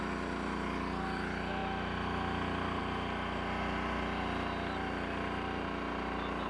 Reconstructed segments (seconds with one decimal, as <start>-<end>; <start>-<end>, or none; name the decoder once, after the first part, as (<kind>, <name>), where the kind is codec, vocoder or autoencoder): none